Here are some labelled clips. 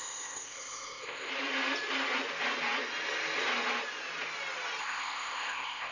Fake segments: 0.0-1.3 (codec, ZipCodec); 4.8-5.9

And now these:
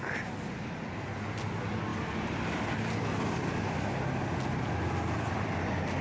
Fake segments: none

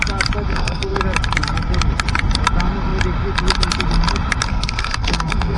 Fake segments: 0.5-1.0 (codec, SNAC); 4.5-5.6